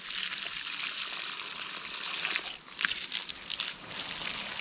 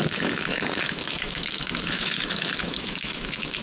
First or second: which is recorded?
first